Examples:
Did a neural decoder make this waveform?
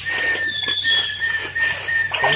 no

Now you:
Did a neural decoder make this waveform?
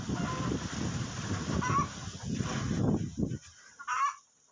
no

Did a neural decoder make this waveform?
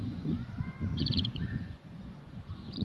yes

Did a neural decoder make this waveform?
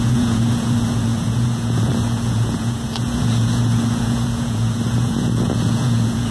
yes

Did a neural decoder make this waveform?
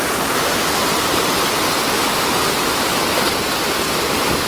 no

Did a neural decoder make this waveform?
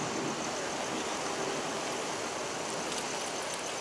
no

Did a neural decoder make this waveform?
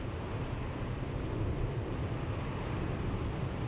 no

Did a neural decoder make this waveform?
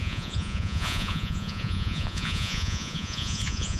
yes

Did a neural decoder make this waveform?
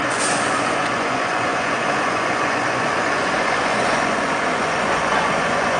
yes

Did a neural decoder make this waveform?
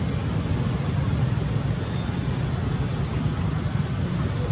no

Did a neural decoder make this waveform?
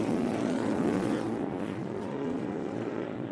yes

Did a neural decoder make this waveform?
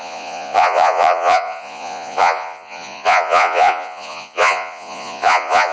yes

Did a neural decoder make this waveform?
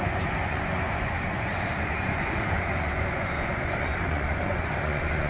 yes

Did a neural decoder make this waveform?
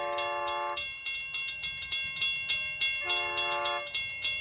no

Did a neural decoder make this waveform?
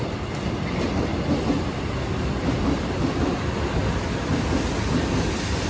no